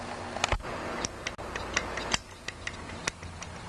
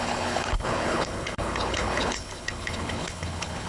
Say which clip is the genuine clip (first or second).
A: first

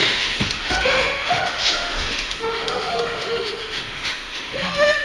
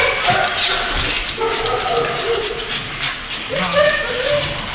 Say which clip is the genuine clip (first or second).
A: second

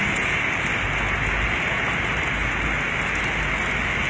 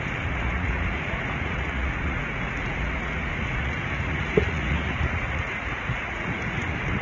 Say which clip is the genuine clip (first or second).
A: first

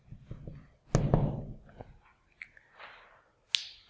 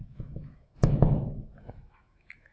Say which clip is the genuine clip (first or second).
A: first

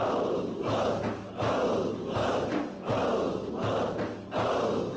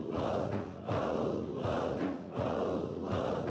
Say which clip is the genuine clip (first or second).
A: first